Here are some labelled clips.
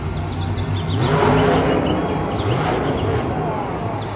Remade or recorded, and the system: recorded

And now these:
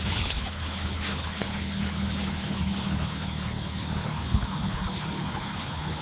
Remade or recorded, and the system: remade, codec, HILCodec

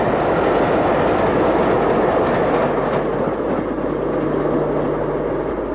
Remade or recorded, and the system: recorded